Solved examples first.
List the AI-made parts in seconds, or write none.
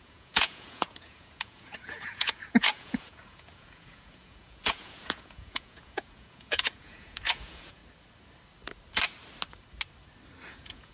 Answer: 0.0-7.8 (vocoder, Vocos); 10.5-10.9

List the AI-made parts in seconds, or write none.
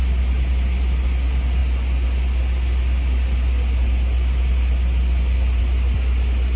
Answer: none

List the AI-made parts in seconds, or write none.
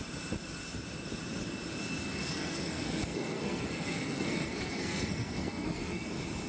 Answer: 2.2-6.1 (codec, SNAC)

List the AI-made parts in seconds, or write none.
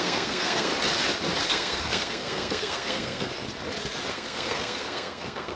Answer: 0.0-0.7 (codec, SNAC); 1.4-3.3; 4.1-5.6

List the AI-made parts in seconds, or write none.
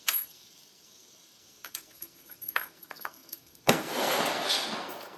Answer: 0.0-5.2 (codec, SNAC)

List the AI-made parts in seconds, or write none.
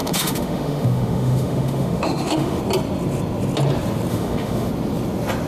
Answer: 0.0-2.6 (autoencoder, DAC-VAE); 4.1-4.7